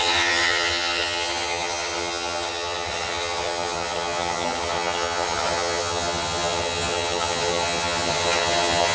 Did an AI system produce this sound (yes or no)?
yes